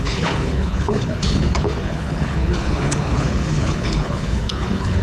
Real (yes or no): no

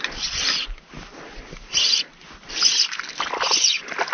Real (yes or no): yes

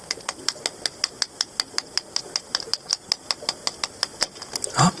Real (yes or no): yes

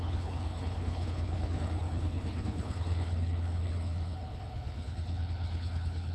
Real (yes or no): no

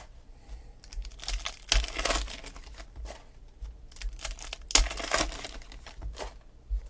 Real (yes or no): yes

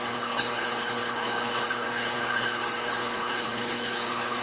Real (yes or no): no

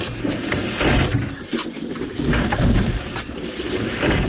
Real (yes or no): yes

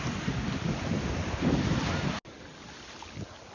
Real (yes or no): yes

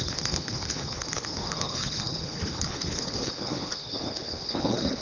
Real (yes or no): no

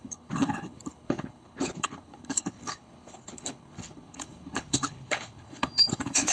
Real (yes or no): no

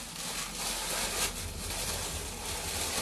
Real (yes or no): yes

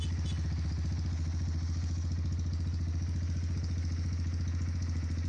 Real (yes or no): yes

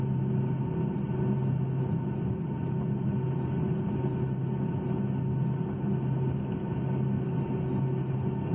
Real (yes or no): yes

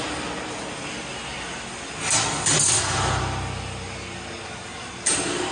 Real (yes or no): yes